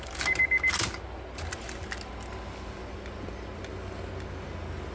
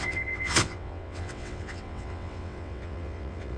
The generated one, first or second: second